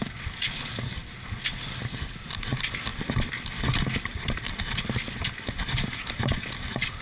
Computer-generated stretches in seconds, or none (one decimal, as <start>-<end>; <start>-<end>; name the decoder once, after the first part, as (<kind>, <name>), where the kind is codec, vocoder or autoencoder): none